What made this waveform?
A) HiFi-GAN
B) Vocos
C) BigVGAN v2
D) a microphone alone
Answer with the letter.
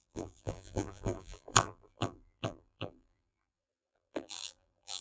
C